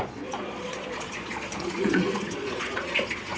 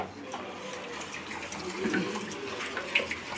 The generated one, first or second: first